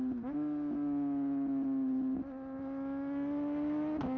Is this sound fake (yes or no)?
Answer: no